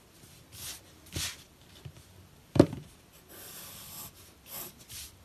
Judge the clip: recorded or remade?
recorded